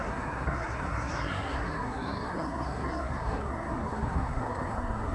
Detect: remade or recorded remade